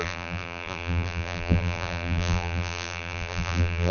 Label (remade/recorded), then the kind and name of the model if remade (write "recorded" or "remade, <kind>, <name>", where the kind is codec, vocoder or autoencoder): remade, vocoder, BigVGAN v2